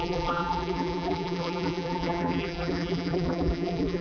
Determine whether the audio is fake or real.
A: fake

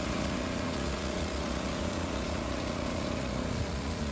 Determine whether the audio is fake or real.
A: fake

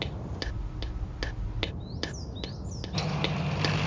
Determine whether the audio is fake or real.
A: real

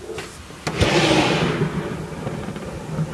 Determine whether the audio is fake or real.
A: real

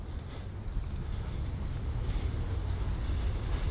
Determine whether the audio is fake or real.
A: real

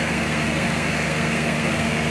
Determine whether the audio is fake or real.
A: fake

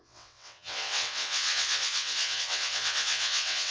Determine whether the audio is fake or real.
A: fake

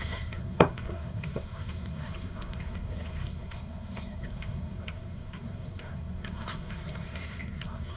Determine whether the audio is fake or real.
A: fake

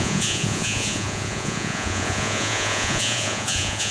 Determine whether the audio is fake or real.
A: fake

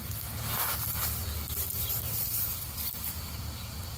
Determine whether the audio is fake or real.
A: real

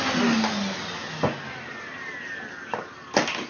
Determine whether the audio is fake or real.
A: real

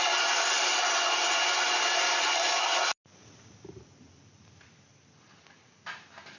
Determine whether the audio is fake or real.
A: real